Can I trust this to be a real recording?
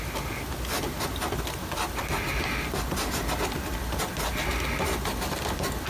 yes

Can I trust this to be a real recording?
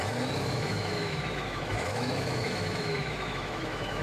no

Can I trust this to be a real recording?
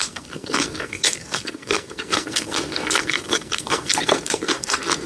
no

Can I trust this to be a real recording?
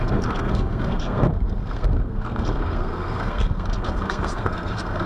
no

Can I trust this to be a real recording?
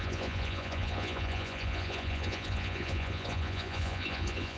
no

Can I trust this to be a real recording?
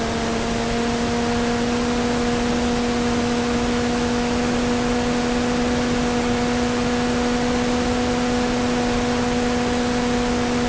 yes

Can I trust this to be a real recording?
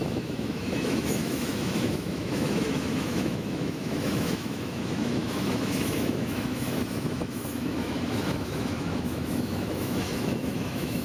no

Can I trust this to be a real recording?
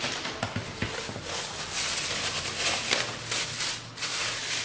yes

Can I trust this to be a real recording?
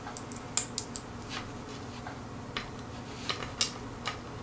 yes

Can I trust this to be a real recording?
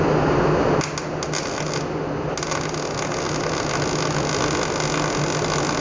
yes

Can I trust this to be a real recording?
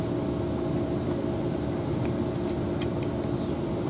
yes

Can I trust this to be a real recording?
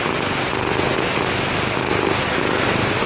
yes